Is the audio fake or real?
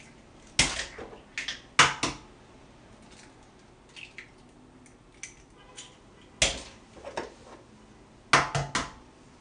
real